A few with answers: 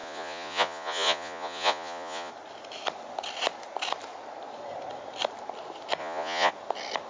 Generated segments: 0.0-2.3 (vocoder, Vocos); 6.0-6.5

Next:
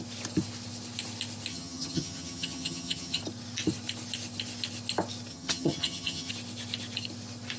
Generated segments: 1.5-3.2 (vocoder, HiFi-GAN); 5.3-6.3

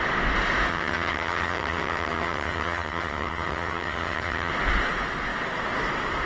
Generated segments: 0.7-4.5 (vocoder, HiFi-GAN)